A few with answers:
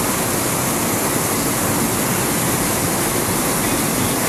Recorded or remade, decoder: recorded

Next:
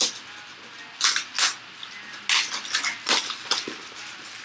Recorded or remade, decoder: recorded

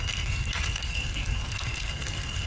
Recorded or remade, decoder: remade, codec, SNAC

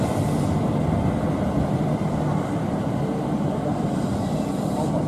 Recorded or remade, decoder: recorded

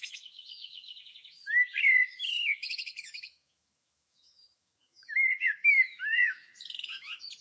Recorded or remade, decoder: remade, autoencoder, DAC-VAE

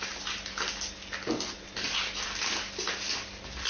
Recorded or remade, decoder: recorded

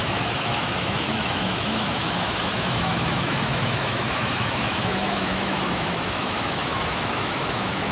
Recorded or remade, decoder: remade, autoencoder, DAC-VAE